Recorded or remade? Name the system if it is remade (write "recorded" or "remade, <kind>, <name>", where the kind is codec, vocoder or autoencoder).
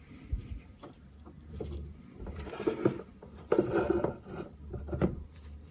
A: remade, vocoder, BigVGAN v2